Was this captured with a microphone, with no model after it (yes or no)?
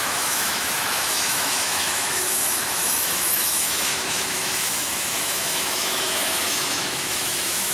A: no